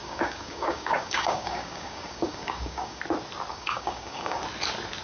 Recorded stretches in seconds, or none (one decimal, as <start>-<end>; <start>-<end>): 3.0-3.5; 4.4-5.0

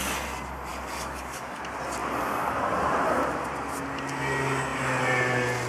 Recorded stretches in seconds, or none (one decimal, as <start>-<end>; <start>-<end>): 0.0-0.7; 1.6-5.7

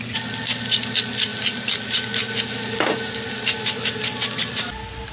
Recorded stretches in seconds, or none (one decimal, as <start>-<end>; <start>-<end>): 0.0-5.1

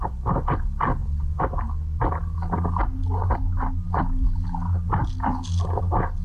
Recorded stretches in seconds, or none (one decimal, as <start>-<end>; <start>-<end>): 0.0-1.0; 1.6-6.2

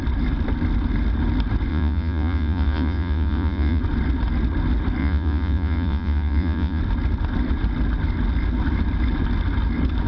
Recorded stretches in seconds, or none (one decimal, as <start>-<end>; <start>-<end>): 0.0-1.7; 3.8-5.0; 6.8-10.1

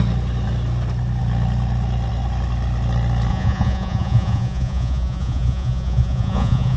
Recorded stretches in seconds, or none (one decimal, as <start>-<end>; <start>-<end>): 0.0-3.3

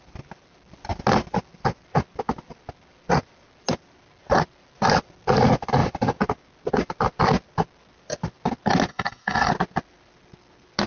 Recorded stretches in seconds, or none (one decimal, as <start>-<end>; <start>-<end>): 0.0-8.9; 9.5-10.9